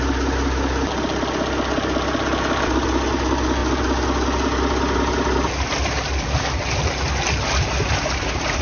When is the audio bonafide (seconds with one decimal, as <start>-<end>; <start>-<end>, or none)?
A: 0.0-8.6